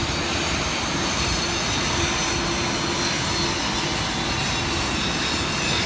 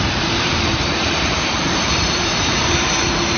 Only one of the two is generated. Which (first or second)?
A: second